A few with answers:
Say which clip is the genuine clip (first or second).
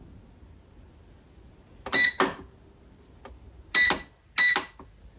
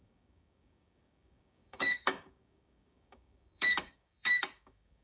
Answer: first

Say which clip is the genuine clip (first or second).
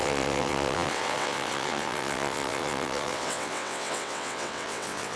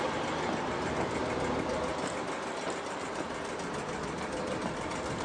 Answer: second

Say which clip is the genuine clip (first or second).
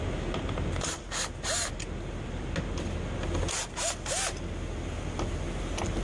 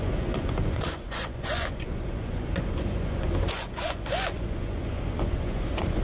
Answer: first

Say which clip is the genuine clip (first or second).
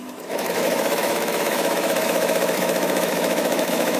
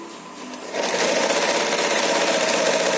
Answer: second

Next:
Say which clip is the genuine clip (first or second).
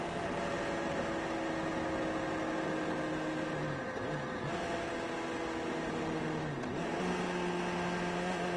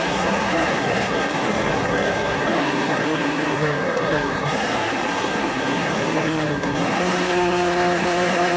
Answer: first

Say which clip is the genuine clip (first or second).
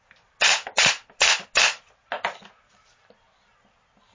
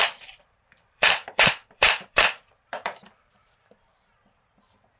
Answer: first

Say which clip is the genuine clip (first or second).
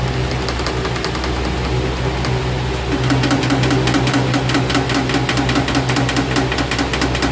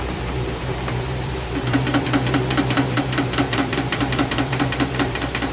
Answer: first